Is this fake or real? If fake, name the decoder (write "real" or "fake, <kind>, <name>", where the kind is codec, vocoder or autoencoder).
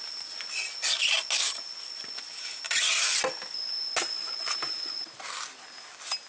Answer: real